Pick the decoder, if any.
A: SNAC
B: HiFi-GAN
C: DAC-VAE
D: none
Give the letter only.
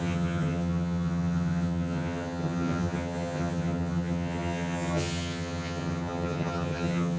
B